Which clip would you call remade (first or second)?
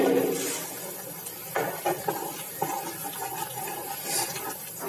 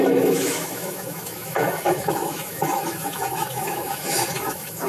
second